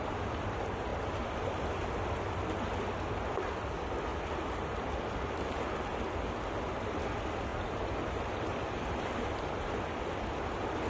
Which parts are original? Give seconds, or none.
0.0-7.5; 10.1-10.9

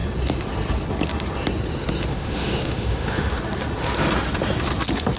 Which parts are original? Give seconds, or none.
0.0-2.1; 3.4-5.2

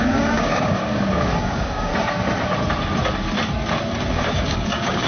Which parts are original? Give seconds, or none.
1.9-4.1

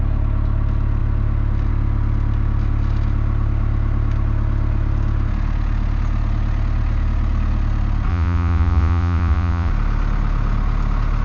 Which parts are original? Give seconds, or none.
0.0-8.1; 9.7-11.2

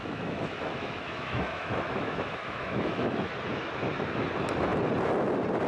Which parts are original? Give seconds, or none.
3.3-5.7

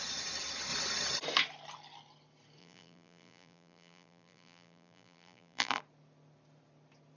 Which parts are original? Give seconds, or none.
0.0-2.6; 5.8-7.2

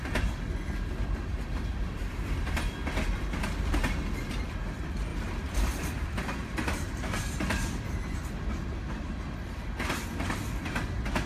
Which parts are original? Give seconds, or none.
0.0-5.1; 7.2-11.3

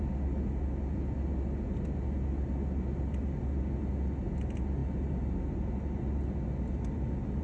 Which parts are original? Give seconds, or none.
0.0-7.4